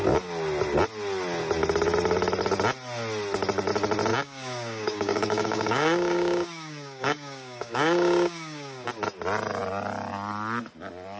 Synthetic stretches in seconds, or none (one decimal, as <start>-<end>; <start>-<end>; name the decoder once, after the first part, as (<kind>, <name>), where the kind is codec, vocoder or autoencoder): 4.1-8.9 (codec, DAC)